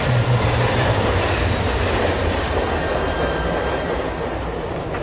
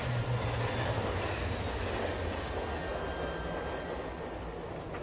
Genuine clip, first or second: second